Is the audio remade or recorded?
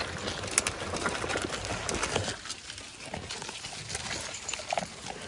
recorded